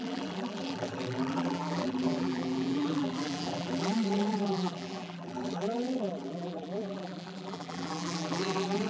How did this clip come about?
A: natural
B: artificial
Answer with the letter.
B